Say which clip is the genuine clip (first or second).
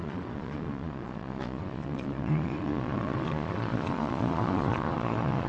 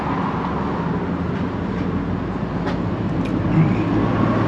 second